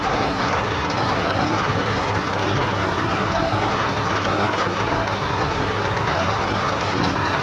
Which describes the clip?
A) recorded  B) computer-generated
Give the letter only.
B